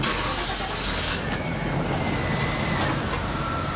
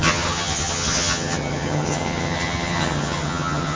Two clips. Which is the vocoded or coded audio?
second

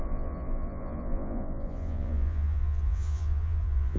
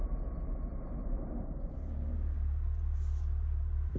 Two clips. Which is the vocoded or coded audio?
first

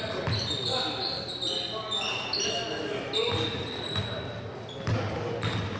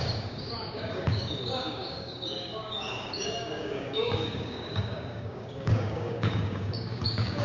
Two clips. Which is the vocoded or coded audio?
second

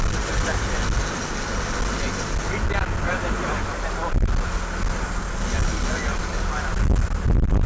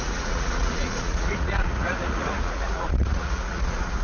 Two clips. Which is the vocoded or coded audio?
second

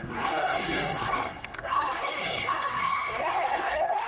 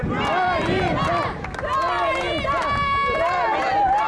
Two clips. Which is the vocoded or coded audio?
first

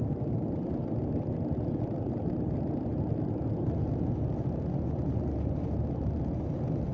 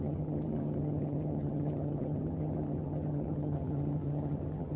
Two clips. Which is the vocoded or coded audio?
second